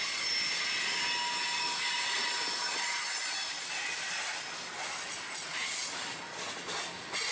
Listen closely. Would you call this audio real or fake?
real